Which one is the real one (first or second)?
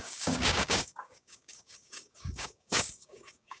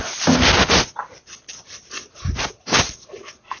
second